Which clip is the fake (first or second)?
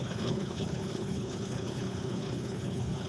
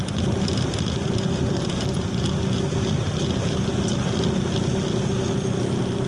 first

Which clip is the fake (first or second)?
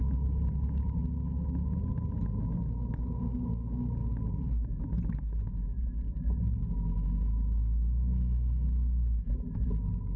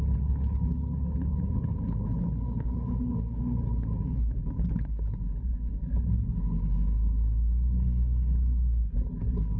second